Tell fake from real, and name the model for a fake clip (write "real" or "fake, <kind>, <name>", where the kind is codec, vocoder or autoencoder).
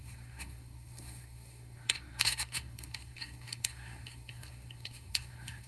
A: fake, codec, SNAC